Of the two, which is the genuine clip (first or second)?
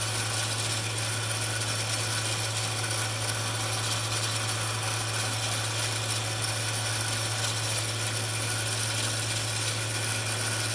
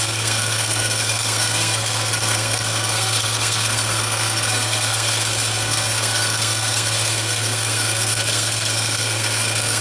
first